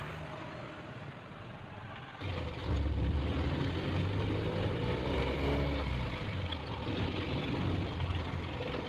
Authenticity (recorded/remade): recorded